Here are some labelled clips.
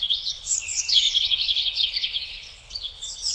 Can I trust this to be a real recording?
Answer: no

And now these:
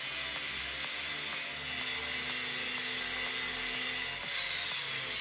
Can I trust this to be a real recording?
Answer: yes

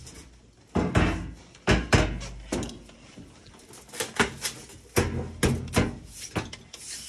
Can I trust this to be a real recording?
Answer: yes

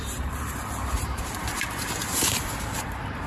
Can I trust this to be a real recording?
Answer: no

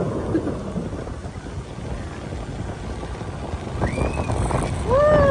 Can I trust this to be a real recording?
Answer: yes